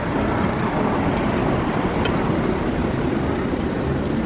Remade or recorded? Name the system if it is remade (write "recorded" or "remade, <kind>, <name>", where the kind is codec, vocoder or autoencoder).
remade, vocoder, BigVGAN v2